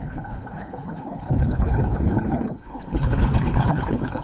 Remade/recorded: remade